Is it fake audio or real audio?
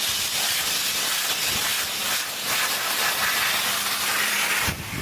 real